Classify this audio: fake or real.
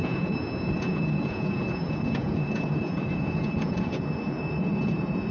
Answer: fake